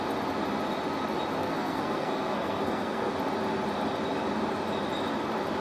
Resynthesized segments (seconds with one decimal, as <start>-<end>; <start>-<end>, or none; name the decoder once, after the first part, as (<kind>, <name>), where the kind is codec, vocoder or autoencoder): 1.4-3.1 (codec, SNAC)